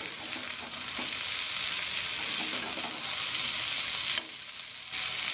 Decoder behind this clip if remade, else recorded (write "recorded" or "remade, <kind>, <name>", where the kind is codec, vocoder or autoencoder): recorded